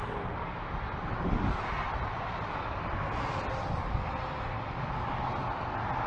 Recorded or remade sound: recorded